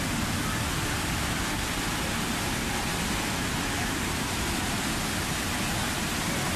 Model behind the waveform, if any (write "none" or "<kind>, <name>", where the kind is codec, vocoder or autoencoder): none